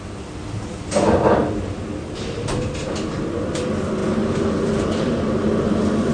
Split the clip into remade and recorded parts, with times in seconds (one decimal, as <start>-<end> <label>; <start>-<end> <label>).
0.0-4.0 recorded; 4.0-6.1 remade